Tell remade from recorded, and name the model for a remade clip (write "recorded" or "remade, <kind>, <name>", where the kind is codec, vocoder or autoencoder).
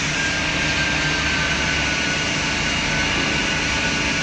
recorded